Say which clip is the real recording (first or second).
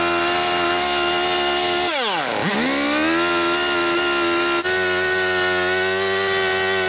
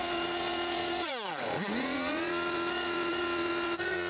first